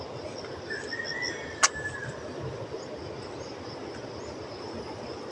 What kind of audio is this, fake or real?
real